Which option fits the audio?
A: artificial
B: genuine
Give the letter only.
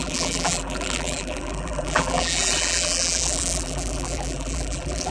A